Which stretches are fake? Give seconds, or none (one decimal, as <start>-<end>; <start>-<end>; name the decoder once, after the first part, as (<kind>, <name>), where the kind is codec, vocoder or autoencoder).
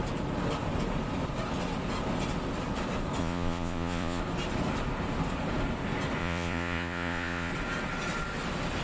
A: 3.2-4.2 (vocoder, Vocos); 6.2-7.5